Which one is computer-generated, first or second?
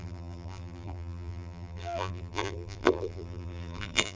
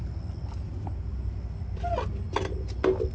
first